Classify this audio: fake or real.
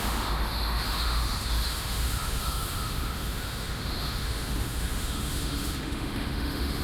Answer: fake